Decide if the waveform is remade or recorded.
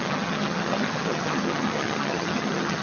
remade